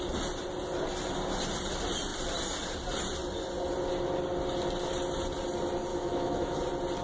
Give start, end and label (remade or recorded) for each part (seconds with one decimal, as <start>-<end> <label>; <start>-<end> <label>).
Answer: 0.0-5.9 recorded; 5.9-6.6 remade; 6.6-7.0 recorded